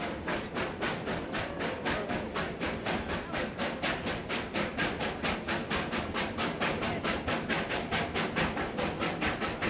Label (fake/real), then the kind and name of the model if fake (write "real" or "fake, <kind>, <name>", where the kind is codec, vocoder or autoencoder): real